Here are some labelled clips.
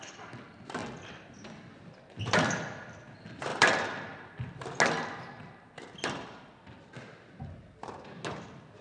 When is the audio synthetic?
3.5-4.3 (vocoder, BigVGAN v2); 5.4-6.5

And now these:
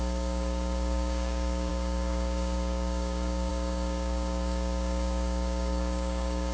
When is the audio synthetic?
0.0-6.5 (codec, DAC)

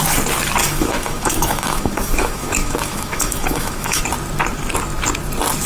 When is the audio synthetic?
0.6-4.0 (autoencoder, DAC-VAE)

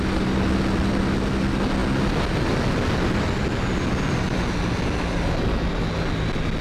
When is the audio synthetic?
none

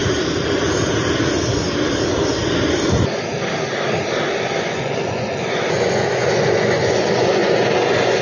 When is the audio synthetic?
4.3-8.2 (vocoder, Vocos)

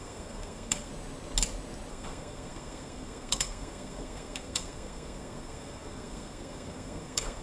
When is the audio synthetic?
0.0-0.9 (codec, SNAC); 1.9-7.4

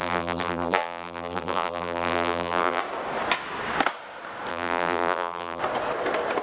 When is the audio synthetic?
0.0-2.8 (vocoder, BigVGAN v2); 4.5-5.6